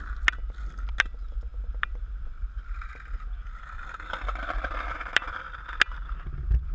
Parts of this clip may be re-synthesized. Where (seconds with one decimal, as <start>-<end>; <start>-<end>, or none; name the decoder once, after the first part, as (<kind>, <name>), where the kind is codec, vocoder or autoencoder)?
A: 1.5-5.5 (vocoder, BigVGAN v2)